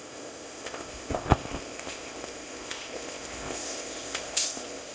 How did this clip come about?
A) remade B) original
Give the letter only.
A